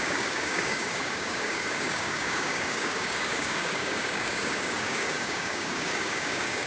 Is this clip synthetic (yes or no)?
yes